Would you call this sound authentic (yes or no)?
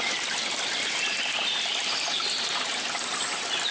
yes